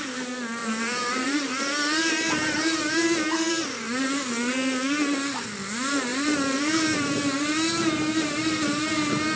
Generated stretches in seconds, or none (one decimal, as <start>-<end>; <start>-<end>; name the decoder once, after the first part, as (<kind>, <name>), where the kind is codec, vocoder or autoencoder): 0.6-3.5 (vocoder, BigVGAN v2); 6.1-8.8